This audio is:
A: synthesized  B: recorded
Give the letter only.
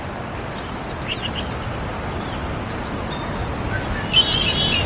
B